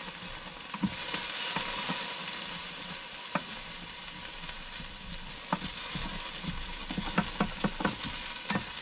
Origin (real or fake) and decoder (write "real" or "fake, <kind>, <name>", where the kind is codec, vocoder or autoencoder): real